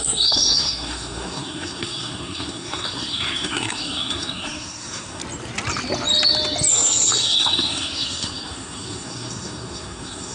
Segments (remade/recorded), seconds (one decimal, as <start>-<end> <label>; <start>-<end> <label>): 0.0-5.2 remade; 5.2-6.7 recorded; 6.7-10.3 remade

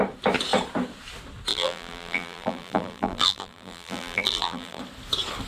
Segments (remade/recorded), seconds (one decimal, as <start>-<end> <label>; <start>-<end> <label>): 0.0-1.5 recorded; 1.5-4.8 remade; 4.8-5.5 recorded

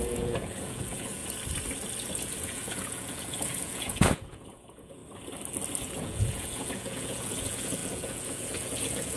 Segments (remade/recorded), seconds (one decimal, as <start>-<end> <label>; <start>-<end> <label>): 0.0-1.2 remade; 1.2-2.1 recorded; 2.1-5.0 remade; 5.0-5.8 recorded; 5.8-9.2 remade

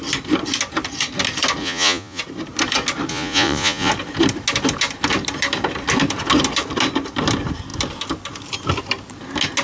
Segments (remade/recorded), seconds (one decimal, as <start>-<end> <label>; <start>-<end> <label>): 0.0-1.6 recorded; 1.6-2.2 remade; 2.2-3.1 recorded; 3.1-3.9 remade; 3.9-9.6 recorded

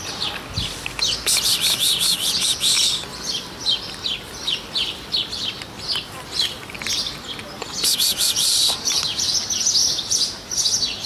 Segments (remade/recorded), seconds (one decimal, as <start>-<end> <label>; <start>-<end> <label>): 0.0-8.1 recorded; 8.1-9.3 remade; 9.3-9.8 recorded; 9.8-10.6 remade; 10.6-11.1 recorded

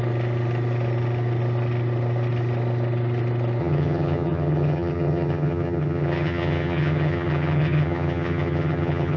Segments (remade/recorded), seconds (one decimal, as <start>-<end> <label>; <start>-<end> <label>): 0.0-3.6 recorded; 3.6-9.2 remade